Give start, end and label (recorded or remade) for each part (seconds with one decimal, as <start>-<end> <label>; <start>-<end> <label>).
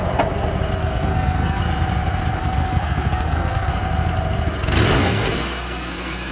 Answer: 0.0-0.8 recorded; 0.8-1.6 remade; 1.6-2.4 recorded; 2.4-3.7 remade; 3.7-5.0 recorded; 5.0-6.3 remade